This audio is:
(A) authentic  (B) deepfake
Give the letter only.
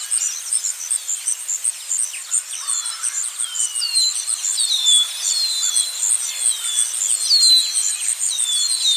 A